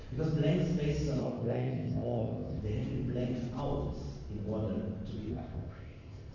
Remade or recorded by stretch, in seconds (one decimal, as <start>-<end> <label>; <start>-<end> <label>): 0.0-1.2 recorded; 1.2-2.6 remade; 2.6-5.3 recorded; 5.3-6.3 remade